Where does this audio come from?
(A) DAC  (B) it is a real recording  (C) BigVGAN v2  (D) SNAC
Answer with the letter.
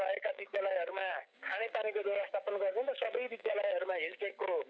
A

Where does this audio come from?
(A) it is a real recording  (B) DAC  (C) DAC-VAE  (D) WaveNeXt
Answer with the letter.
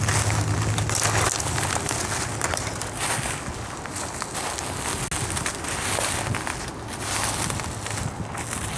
A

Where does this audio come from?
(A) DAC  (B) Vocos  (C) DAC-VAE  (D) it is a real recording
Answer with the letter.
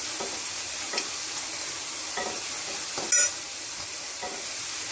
D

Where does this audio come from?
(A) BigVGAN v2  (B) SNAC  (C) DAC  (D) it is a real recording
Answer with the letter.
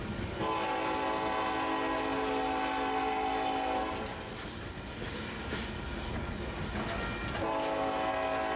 D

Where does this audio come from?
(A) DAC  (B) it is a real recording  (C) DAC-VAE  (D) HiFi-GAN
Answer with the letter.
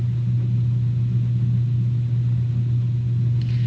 B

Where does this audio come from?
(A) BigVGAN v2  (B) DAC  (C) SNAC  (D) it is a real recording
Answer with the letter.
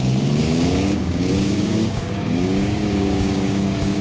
B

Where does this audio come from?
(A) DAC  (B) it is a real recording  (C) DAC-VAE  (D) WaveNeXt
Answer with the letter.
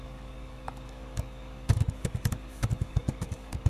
A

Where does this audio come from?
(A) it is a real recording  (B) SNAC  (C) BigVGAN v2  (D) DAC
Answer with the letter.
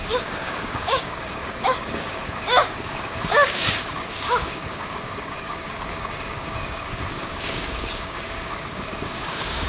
D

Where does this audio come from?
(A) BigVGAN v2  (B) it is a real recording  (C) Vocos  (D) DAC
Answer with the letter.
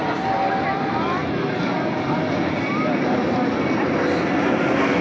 B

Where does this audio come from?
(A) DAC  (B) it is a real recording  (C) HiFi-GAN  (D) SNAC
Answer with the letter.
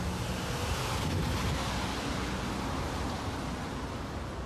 B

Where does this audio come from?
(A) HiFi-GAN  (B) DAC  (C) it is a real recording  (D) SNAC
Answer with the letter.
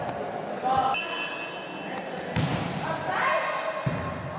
C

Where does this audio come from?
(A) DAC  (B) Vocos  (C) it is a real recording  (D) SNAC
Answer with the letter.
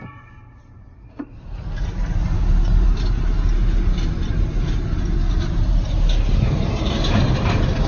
C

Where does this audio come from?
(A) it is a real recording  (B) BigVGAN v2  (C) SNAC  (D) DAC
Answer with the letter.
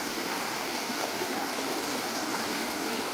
D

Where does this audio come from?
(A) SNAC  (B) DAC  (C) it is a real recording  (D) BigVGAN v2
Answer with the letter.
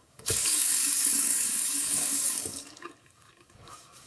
B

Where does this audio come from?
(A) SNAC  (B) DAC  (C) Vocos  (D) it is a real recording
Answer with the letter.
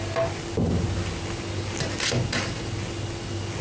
D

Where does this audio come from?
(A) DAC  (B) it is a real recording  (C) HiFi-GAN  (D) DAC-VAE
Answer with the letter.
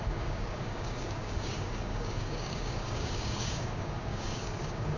A